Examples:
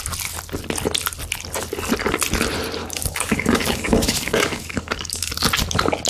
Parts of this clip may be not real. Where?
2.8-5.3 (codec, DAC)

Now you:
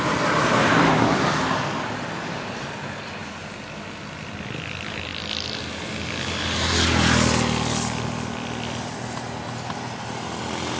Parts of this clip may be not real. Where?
none

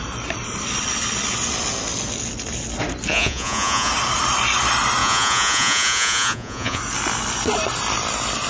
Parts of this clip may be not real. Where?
3.1-3.9 (vocoder, Vocos); 5.0-6.8

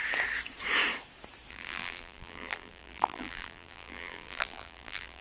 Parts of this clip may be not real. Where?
1.5-5.2 (vocoder, BigVGAN v2)

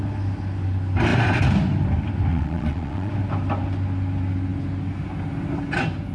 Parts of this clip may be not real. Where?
2.3-3.1 (vocoder, Vocos)